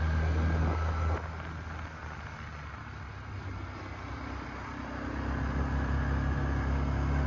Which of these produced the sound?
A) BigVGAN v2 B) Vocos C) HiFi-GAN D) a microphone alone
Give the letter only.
D